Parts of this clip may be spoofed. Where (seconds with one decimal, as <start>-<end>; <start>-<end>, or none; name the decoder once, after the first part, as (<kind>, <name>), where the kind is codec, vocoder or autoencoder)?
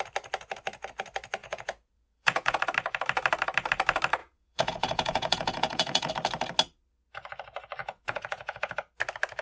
1.4-2.6 (vocoder, Vocos); 4.2-6.1; 7.8-8.7